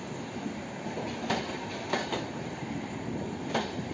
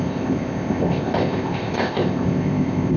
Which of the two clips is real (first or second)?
first